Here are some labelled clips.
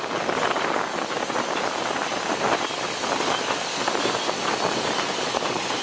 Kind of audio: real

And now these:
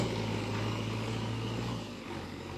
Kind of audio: fake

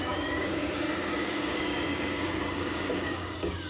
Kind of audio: fake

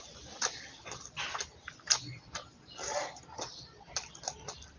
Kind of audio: real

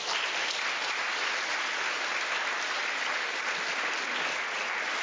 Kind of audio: real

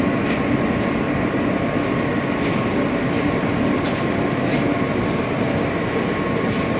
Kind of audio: real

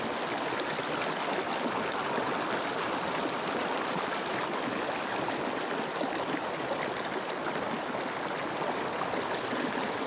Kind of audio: real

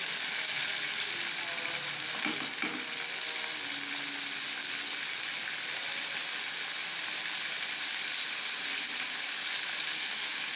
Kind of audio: real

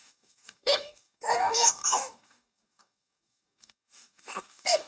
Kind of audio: fake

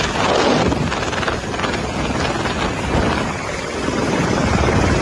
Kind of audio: real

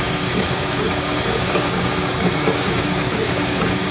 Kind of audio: fake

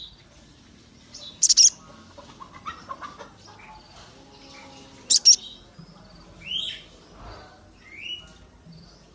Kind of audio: real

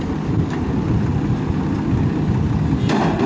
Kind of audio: real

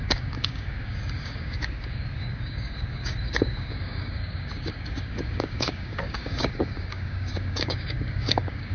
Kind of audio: fake